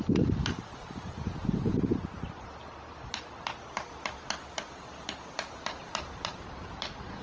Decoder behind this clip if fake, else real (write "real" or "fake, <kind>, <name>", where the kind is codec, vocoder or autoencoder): real